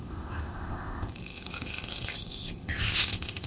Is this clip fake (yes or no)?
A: yes